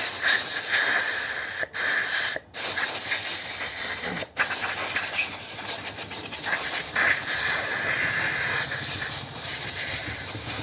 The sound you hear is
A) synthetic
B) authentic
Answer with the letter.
B